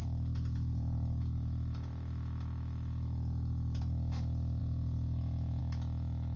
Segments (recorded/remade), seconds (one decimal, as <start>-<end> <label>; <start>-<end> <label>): 0.0-3.8 remade; 3.8-4.6 recorded; 4.6-5.6 remade; 5.6-6.4 recorded